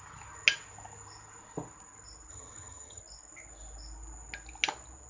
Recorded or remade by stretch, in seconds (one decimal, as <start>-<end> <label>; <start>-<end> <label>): 0.0-2.3 recorded; 2.3-3.0 remade; 3.0-5.1 recorded